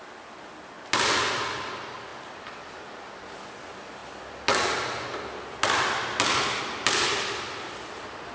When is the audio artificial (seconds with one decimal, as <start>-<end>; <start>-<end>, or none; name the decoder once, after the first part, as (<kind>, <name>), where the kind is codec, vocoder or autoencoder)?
none